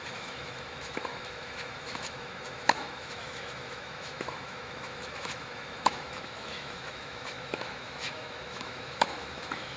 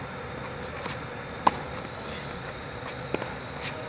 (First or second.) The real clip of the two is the second